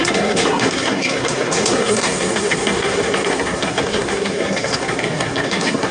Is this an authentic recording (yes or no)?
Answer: no